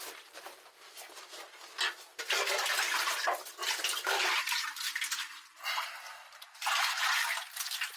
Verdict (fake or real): real